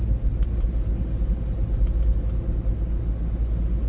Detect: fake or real real